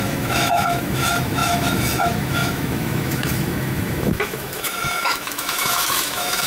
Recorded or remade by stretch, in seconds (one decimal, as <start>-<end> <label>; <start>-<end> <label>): 0.0-6.5 remade